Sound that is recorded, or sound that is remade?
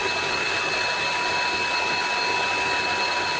recorded